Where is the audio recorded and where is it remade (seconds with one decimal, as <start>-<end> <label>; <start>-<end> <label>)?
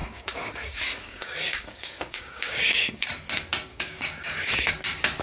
0.0-3.1 remade; 3.1-3.7 recorded; 3.7-4.7 remade; 4.7-5.2 recorded